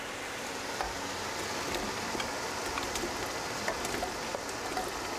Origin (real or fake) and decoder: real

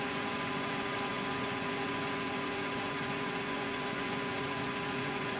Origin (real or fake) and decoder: fake, vocoder, Vocos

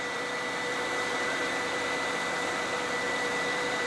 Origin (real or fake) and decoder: fake, vocoder, BigVGAN v2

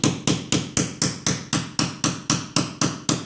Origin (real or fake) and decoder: real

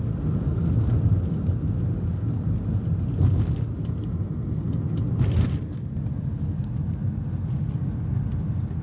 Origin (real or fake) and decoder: real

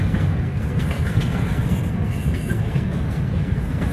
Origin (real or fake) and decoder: fake, codec, SNAC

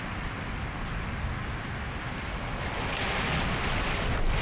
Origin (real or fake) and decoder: real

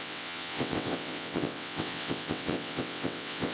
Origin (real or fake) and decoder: fake, vocoder, WaveNeXt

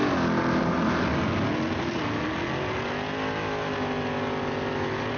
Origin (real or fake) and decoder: real